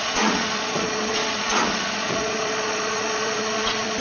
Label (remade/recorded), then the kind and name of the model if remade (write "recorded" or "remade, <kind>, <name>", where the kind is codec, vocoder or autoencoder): remade, vocoder, Vocos